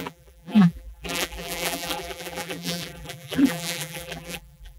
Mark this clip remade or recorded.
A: remade